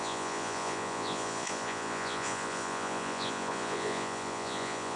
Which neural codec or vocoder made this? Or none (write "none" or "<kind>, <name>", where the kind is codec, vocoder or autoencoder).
vocoder, Vocos